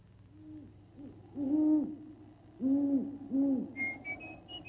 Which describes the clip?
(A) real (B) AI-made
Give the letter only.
A